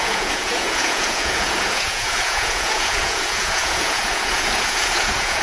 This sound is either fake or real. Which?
fake